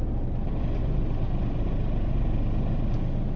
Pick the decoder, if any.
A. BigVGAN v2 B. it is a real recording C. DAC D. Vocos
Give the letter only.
B